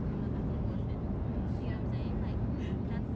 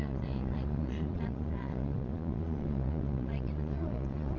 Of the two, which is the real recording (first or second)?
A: first